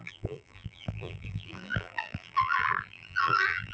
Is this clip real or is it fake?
fake